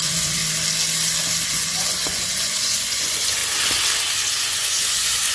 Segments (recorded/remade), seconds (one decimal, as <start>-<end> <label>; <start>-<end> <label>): 0.0-0.4 remade; 0.4-1.5 recorded; 1.5-3.4 remade; 3.4-4.4 recorded; 4.4-5.3 remade